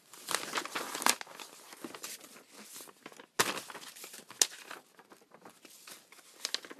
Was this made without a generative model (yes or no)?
yes